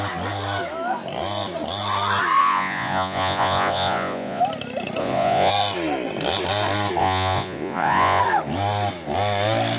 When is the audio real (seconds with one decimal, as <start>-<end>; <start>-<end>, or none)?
0.0-2.4; 4.4-5.0; 5.5-7.0; 8.2-9.8